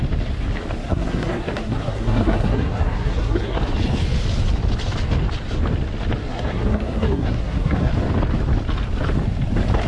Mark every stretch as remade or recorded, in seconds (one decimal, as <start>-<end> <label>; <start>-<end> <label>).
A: 0.0-0.8 recorded; 0.8-3.6 remade; 3.6-6.2 recorded; 6.2-7.9 remade; 7.9-9.9 recorded